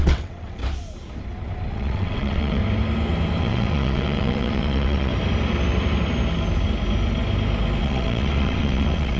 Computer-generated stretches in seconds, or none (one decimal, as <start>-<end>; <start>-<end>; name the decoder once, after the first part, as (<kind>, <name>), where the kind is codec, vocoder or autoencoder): 0.0-0.6 (vocoder, WaveNeXt); 1.7-2.6; 3.4-5.1; 7.8-9.2